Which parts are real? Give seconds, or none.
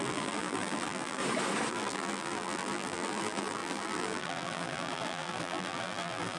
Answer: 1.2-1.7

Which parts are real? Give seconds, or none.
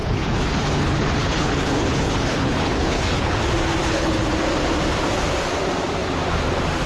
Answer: 3.4-3.8; 4.3-6.9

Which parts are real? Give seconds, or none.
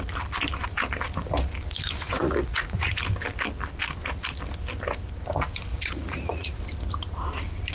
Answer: 0.0-2.0; 2.9-5.7; 6.6-7.7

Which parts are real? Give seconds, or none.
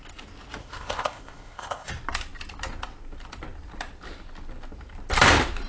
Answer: 0.0-0.6; 1.9-5.7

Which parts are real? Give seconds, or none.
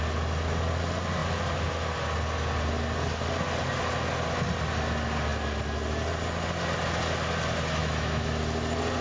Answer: 0.0-7.8; 8.4-9.0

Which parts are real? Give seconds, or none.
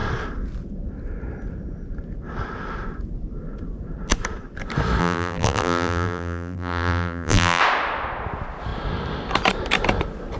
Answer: 0.0-5.0; 7.6-10.4